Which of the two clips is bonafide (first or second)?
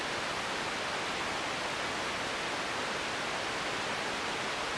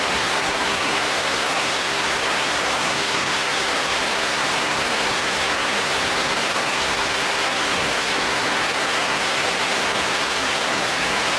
first